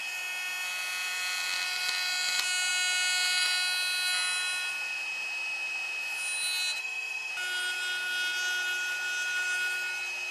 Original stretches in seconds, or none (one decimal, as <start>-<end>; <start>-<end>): 0.0-6.8; 7.3-10.3